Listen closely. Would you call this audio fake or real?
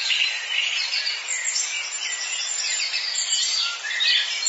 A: real